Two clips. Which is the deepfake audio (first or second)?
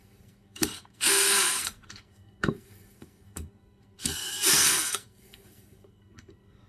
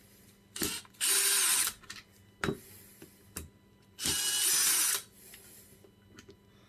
first